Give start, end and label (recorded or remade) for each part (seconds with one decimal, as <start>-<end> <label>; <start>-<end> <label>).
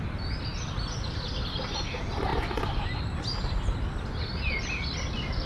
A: 0.0-5.5 recorded